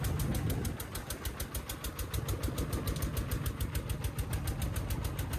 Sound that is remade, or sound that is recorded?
recorded